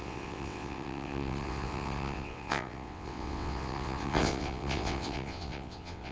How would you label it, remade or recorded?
remade